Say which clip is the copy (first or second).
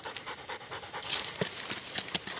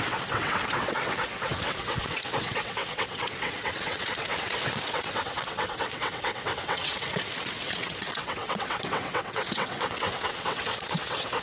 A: second